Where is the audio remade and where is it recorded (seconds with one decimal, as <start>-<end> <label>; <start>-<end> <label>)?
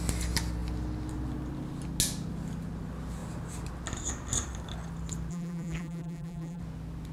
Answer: 0.0-5.3 recorded; 5.3-6.6 remade; 6.6-7.1 recorded